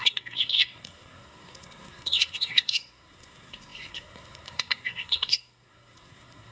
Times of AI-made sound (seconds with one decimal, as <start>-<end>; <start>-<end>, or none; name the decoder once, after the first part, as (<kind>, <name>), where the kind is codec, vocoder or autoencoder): 0.0-6.5 (codec, SNAC)